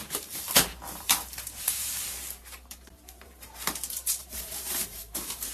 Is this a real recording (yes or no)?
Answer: no